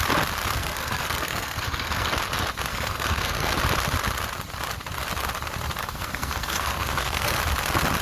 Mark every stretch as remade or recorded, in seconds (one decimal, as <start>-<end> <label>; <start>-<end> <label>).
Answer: 0.0-0.6 recorded; 0.6-2.1 remade; 2.1-2.7 recorded; 2.7-3.6 remade; 3.6-5.8 recorded; 5.8-7.4 remade; 7.4-8.0 recorded